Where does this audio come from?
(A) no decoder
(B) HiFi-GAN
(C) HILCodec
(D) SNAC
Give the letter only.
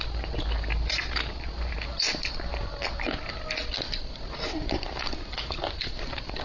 A